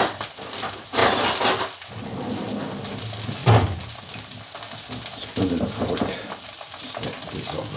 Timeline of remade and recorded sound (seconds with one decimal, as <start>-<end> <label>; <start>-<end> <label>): 0.0-7.8 recorded